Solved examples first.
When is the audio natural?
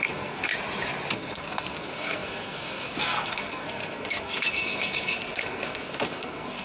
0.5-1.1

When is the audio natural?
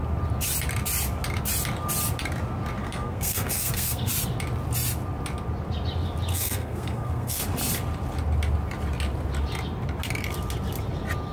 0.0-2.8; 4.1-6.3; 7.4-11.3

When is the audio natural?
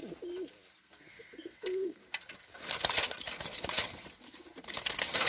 0.0-0.8; 2.0-5.3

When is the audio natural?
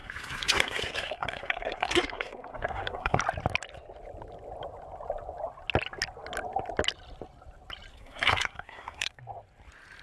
3.2-7.9; 9.2-10.0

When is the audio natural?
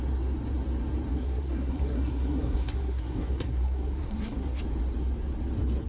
0.0-1.1; 4.6-5.9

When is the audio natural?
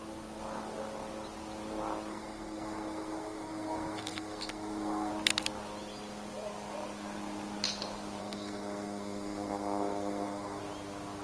0.0-2.1; 5.1-8.2; 10.6-11.2